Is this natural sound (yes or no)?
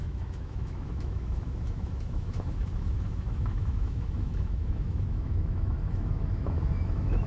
no